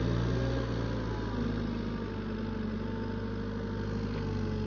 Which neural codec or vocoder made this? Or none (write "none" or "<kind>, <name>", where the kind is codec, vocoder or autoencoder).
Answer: none